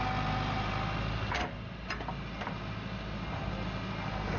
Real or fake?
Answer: real